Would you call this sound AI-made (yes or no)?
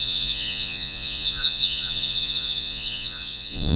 yes